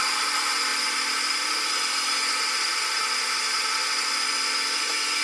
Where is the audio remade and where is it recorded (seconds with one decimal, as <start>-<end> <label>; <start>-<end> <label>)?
0.0-0.7 recorded; 0.7-3.8 remade; 3.8-5.2 recorded